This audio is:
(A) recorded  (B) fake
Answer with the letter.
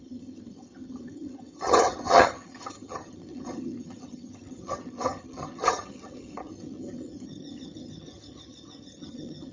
B